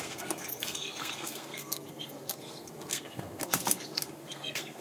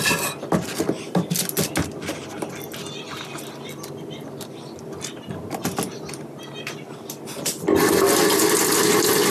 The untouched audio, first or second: second